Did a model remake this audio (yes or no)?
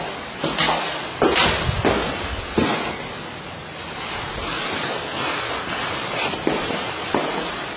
no